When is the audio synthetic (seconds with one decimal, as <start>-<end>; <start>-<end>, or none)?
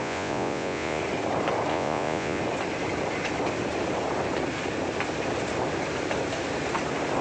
0.0-1.0; 1.7-2.4